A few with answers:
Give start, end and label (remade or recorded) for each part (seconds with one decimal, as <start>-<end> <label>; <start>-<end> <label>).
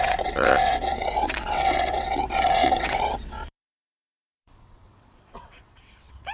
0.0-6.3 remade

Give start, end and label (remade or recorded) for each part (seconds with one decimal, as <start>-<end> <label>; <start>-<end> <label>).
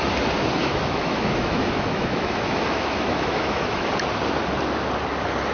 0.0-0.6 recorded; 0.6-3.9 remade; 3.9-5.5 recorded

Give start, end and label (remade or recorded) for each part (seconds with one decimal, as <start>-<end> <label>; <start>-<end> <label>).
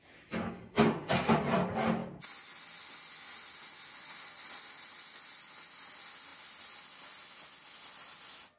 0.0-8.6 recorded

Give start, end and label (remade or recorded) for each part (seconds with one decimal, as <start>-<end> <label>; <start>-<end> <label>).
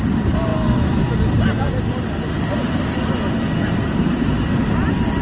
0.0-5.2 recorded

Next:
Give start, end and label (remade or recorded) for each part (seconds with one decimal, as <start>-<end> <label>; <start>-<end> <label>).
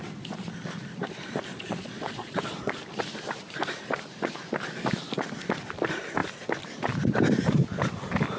0.0-1.5 recorded; 1.5-2.7 remade; 2.7-8.4 recorded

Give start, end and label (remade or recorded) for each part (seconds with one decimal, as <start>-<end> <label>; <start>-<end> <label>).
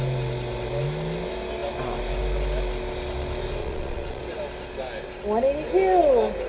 0.0-3.6 recorded; 3.6-4.2 remade; 4.2-6.5 recorded